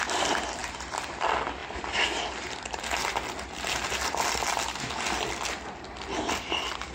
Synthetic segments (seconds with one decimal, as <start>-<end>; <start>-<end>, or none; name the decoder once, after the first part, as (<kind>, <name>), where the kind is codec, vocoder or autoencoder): 0.6-1.2 (vocoder, BigVGAN v2)